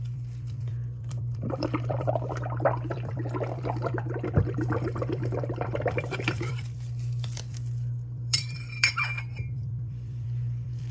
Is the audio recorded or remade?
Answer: remade